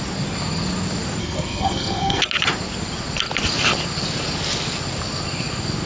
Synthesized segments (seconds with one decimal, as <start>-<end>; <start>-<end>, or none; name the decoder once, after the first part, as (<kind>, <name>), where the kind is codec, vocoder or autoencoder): 1.2-2.2 (codec, SNAC)